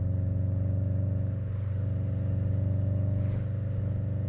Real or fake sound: real